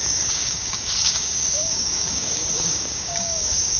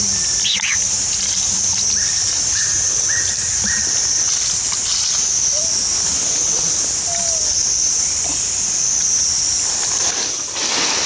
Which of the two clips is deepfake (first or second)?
first